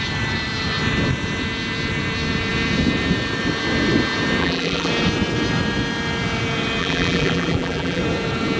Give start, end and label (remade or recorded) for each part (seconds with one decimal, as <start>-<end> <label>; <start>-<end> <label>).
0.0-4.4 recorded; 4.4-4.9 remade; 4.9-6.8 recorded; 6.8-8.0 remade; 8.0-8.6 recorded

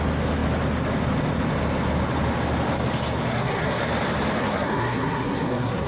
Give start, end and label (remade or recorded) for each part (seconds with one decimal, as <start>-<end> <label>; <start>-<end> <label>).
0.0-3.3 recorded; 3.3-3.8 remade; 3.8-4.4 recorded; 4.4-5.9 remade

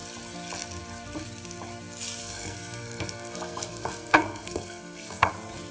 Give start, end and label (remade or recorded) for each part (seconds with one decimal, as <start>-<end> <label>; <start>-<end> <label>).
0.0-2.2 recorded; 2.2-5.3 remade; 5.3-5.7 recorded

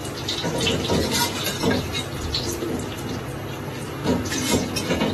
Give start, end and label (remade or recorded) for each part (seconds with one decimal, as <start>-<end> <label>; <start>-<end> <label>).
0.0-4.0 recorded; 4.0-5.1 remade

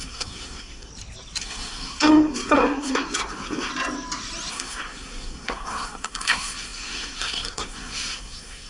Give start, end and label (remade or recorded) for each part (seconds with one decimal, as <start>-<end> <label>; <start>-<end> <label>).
0.0-0.9 remade; 0.9-1.4 recorded; 1.4-3.7 remade; 3.7-4.5 recorded; 4.5-8.7 remade

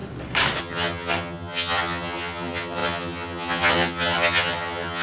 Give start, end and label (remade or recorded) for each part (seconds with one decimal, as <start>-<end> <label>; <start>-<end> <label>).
0.0-0.6 recorded; 0.6-5.0 remade

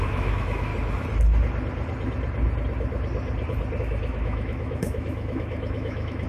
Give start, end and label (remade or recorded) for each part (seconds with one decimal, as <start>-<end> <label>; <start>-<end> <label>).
0.0-0.7 remade; 0.7-3.8 recorded; 3.8-6.3 remade

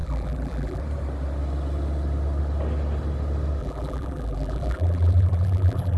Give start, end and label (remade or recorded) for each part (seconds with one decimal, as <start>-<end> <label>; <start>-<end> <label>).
0.0-0.8 remade; 0.8-3.6 recorded; 3.6-6.0 remade